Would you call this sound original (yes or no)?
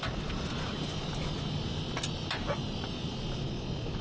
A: yes